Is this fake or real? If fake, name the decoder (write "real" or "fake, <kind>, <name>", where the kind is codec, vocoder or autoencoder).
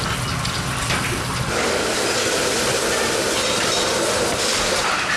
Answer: real